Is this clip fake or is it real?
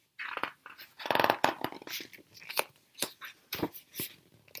real